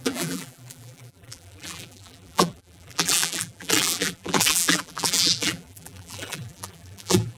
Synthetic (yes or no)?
yes